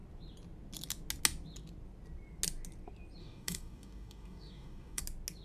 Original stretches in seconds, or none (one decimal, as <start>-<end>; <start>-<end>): 0.0-3.2; 5.0-5.4